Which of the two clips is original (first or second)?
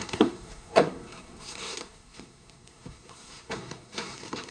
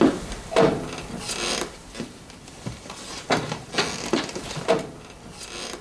second